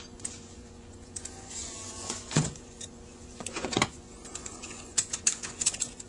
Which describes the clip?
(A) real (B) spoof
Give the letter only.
B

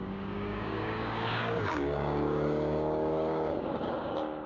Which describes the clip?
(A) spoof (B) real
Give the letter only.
A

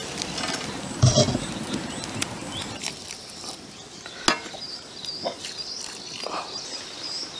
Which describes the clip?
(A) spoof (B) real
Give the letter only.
B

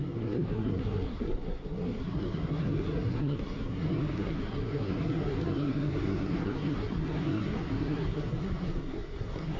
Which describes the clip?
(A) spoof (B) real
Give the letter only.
A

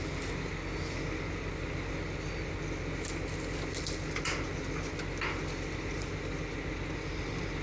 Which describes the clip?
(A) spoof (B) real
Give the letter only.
B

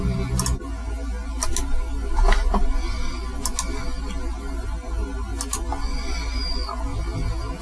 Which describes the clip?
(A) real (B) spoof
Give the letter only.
A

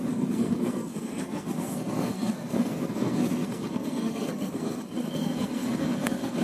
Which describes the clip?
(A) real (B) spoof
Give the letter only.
B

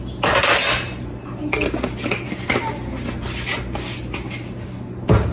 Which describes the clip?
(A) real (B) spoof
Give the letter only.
A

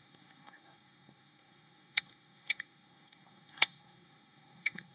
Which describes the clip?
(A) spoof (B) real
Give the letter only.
A